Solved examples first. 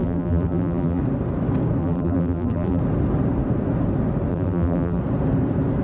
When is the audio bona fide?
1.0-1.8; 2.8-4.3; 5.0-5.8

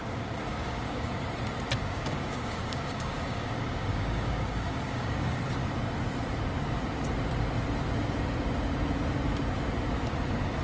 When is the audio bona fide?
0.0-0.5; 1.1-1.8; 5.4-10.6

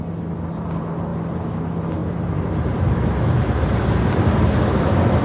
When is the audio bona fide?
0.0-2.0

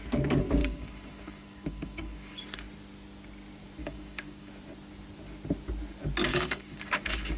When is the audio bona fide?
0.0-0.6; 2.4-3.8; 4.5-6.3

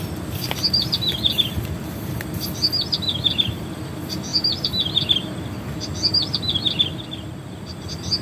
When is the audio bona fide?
0.0-8.2

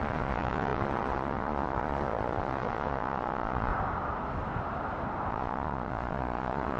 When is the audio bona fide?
3.7-5.3